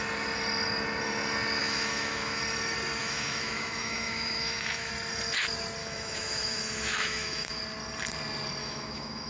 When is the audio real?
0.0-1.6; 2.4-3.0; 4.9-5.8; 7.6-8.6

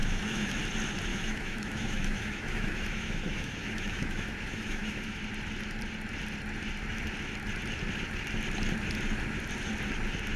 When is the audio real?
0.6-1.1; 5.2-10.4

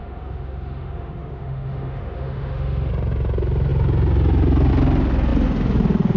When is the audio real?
2.9-6.2